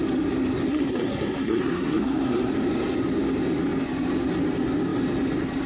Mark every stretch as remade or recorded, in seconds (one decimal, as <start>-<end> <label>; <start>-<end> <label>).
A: 0.0-0.7 recorded; 0.7-2.5 remade; 2.5-5.7 recorded